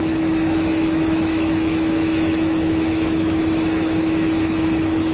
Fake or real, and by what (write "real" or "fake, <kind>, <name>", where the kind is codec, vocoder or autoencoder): fake, autoencoder, DAC-VAE